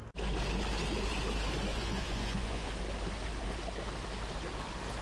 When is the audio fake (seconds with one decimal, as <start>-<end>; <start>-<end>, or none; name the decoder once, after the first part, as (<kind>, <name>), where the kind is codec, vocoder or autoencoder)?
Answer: 1.7-2.7 (vocoder, Vocos)